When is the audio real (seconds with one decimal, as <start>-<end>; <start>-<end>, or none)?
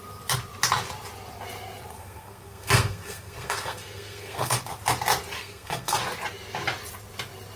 0.0-2.0; 4.6-5.4; 6.0-7.6